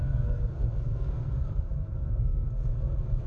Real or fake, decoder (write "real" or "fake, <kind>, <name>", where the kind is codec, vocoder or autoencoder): fake, codec, SNAC